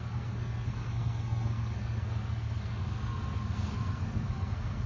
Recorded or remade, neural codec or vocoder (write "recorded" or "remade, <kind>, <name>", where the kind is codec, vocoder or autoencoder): remade, codec, SNAC